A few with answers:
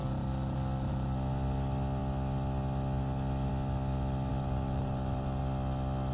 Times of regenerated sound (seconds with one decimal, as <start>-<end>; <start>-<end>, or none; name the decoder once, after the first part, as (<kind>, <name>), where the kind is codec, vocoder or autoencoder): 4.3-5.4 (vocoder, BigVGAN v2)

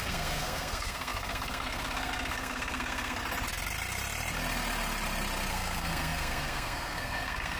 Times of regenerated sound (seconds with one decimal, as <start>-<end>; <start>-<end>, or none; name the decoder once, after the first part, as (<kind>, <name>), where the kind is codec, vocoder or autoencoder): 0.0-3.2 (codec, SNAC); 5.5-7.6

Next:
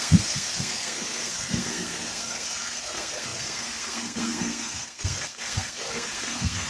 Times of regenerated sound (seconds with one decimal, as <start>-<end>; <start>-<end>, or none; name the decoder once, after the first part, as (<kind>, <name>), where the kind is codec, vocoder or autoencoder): 0.0-6.7 (codec, SNAC)

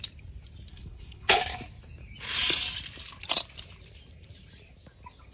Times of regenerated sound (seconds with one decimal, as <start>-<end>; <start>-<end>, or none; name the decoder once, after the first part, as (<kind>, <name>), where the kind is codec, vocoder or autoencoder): 0.7-1.4 (codec, HILCodec)

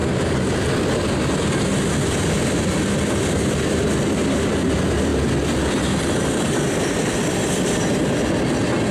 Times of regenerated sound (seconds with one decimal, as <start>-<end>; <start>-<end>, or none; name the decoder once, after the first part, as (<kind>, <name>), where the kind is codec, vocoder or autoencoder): none